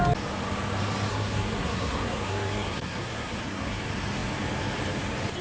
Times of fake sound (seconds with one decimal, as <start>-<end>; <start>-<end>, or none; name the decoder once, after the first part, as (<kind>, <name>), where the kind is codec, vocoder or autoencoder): 1.1-3.8 (codec, SNAC)